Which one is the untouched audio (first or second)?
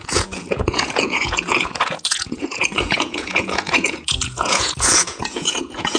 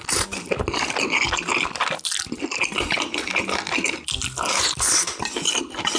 second